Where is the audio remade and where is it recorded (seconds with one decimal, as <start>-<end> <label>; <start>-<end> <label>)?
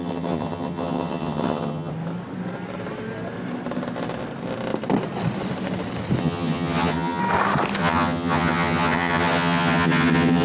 0.0-1.9 remade; 1.9-6.2 recorded; 6.2-7.2 remade; 7.2-7.8 recorded; 7.8-10.4 remade